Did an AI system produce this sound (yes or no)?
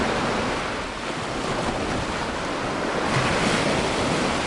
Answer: no